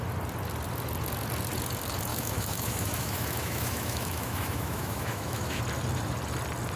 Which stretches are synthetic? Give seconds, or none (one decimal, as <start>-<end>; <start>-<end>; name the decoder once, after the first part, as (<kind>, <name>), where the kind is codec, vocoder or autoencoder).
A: 2.1-5.6 (autoencoder, DAC-VAE)